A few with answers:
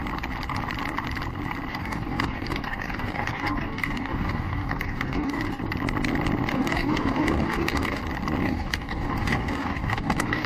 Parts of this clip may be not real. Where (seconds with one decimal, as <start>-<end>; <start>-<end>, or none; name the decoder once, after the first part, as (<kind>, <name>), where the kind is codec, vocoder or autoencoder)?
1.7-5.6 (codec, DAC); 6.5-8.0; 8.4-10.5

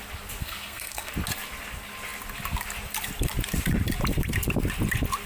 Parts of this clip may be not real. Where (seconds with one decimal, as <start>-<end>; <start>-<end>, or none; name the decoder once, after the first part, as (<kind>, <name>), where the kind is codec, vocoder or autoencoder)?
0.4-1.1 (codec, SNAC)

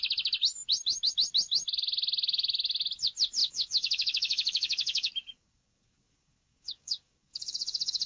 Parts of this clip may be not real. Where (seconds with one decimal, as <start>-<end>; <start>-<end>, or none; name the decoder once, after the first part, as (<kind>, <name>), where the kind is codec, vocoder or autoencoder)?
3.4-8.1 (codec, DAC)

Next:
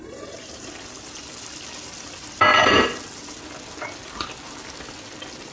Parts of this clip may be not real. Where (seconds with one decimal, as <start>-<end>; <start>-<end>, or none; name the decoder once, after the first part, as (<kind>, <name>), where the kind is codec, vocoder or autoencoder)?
none